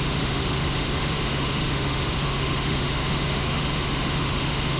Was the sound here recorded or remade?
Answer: remade